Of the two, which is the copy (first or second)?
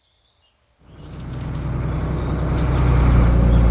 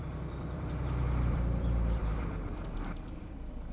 second